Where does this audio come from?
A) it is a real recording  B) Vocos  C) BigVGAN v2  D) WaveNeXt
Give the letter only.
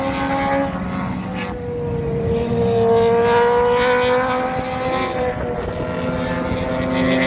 A